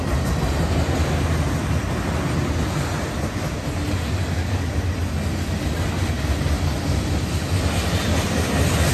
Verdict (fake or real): real